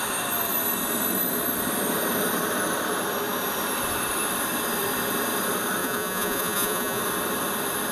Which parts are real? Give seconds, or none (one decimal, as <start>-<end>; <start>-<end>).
0.0-5.8; 7.0-7.9